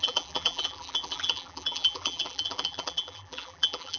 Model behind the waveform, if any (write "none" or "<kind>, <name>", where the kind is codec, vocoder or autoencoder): vocoder, BigVGAN v2